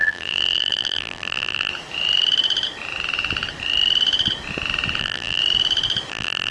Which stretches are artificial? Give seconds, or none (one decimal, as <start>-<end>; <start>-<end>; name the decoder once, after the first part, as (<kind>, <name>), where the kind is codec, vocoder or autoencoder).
0.0-1.7 (vocoder, BigVGAN v2); 5.0-5.4; 6.1-6.5